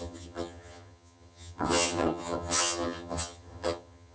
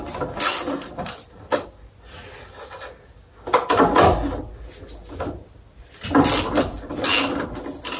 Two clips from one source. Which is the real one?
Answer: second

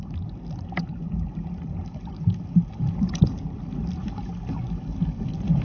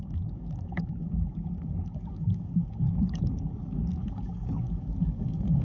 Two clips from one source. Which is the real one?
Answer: first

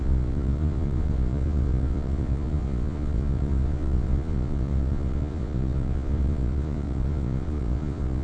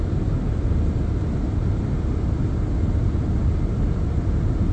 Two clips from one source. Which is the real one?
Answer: second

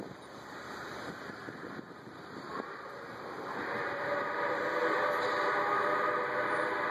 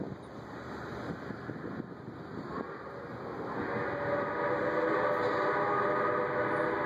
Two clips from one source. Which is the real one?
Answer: second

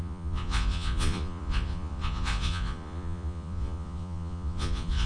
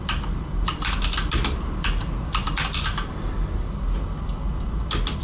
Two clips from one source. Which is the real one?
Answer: second